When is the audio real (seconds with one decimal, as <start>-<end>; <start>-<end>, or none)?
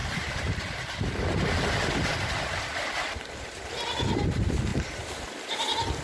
0.9-4.7; 5.3-6.0